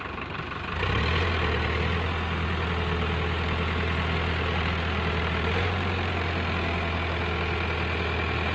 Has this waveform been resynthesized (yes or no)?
no